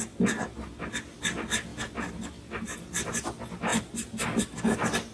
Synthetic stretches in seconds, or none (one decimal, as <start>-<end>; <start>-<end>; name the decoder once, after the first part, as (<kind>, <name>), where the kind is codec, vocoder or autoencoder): none